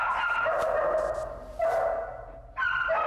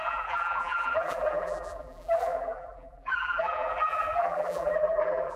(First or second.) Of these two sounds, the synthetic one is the second